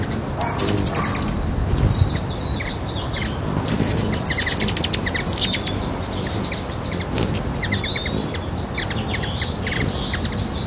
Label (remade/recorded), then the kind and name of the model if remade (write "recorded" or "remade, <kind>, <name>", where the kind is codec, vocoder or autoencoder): recorded